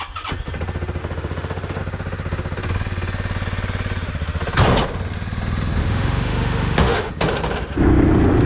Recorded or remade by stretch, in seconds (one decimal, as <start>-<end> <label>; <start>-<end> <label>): 0.0-1.0 recorded; 1.0-1.8 remade; 1.8-5.8 recorded; 5.8-7.1 remade; 7.1-8.5 recorded